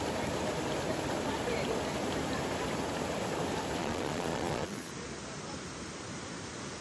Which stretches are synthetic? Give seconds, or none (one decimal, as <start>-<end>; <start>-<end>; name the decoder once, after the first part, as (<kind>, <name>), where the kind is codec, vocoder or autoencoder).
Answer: 3.8-4.9 (vocoder, Vocos)